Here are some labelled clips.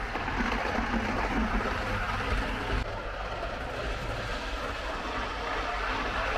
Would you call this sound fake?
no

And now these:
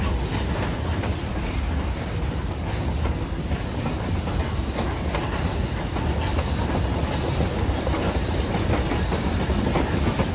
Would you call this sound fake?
no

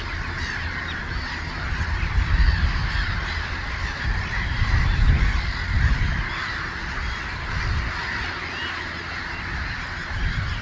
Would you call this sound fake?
no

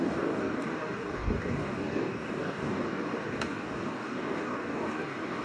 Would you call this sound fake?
yes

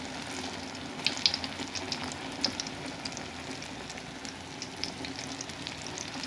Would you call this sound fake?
no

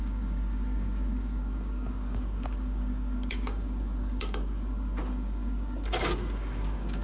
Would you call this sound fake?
yes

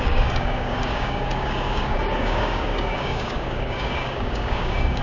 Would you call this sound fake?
yes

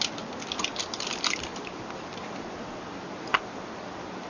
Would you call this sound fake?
no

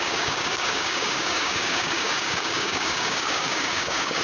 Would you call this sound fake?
yes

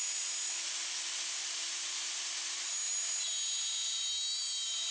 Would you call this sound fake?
no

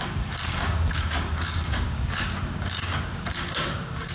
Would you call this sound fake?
yes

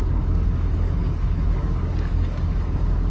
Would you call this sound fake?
yes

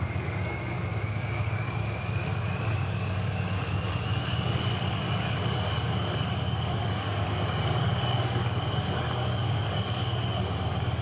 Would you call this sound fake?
yes